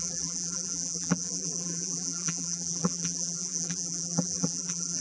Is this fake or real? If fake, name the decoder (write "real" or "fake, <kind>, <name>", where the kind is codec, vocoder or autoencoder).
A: fake, vocoder, BigVGAN v2